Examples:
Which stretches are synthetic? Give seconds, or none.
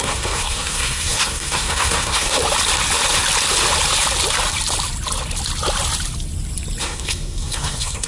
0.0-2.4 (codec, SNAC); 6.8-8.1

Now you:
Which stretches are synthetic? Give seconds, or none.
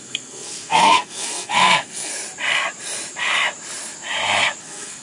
0.0-2.1 (codec, SNAC); 4.6-5.0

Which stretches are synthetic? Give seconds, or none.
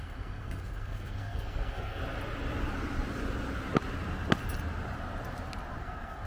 0.0-2.0 (codec, SNAC); 5.8-6.3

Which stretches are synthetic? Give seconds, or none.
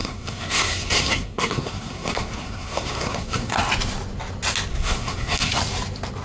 0.0-3.6 (codec, SNAC); 4.7-5.6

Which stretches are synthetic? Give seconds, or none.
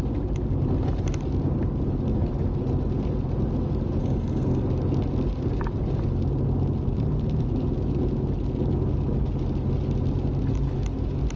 4.0-4.6 (codec, SNAC)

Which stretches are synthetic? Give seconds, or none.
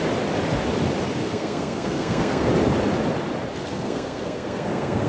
1.2-2.5 (codec, SNAC); 3.7-5.1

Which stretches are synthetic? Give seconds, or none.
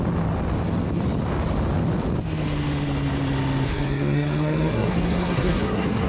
3.7-6.1 (codec, SNAC)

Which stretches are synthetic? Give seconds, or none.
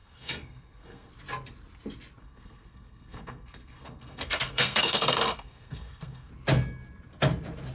0.0-1.1 (codec, SNAC); 2.2-6.3